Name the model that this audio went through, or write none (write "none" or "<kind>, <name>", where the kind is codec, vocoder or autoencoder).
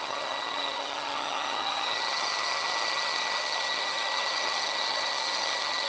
vocoder, HiFi-GAN